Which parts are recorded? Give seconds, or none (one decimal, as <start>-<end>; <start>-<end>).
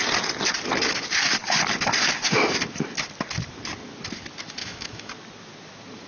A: 0.0-4.6; 5.1-6.1